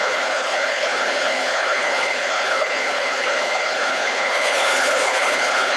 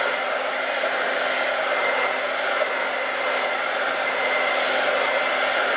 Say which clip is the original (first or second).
second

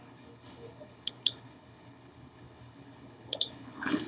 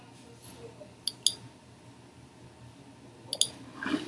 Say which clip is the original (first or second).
second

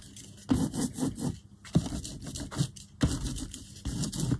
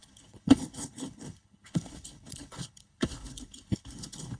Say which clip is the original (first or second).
first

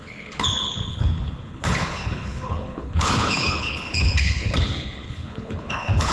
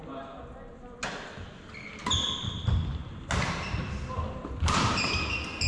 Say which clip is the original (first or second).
second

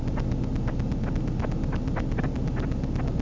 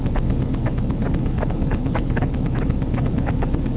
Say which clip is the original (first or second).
first